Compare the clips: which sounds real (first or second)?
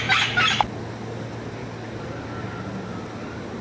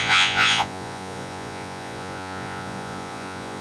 first